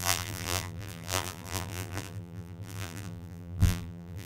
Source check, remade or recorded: remade